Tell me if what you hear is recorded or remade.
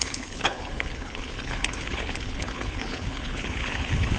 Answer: remade